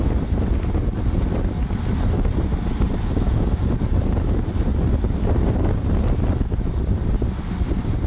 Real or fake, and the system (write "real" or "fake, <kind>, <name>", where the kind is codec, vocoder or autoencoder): real